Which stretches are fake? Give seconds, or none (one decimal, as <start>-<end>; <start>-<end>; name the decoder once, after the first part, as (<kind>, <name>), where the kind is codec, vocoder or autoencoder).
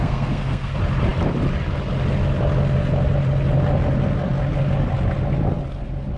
0.0-0.7 (codec, SNAC)